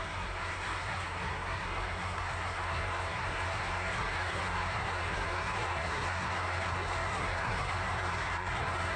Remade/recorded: remade